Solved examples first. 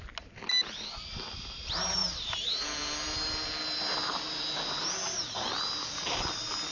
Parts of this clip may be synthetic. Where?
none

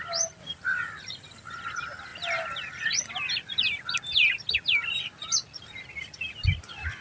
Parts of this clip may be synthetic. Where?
none

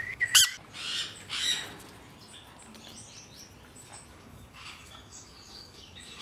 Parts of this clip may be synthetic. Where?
0.0-0.4 (codec, DAC); 4.1-6.2

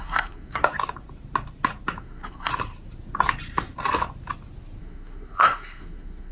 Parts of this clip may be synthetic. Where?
0.0-0.6 (codec, SNAC); 2.0-2.5; 4.8-6.3

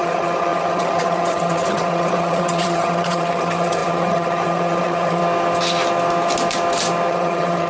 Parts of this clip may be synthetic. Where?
0.0-5.2 (vocoder, HiFi-GAN); 7.1-7.7

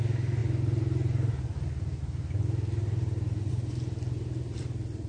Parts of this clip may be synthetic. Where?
none

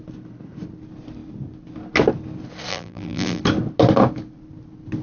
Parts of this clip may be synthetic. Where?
2.7-3.4 (vocoder, BigVGAN v2)

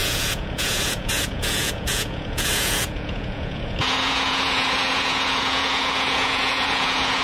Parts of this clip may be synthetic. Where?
0.0-7.2 (vocoder, Vocos)